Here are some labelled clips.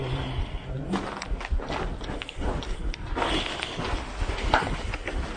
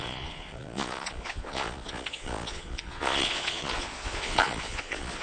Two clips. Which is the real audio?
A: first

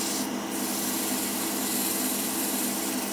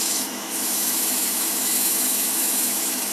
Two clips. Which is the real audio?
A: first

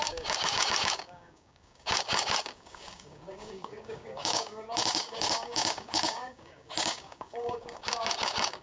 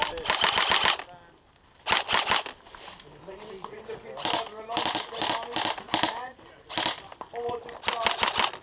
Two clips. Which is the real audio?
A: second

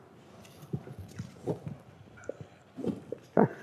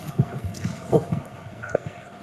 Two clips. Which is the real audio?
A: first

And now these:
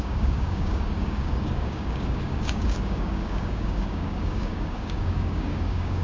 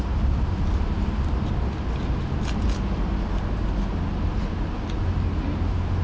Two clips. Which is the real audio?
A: second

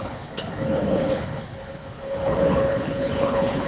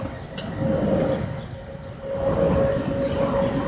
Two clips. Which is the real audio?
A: second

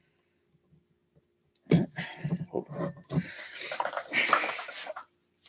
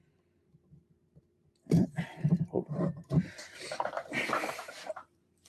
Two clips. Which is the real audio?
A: first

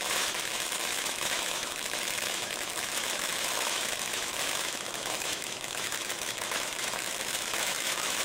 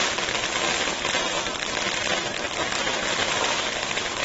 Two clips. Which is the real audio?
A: second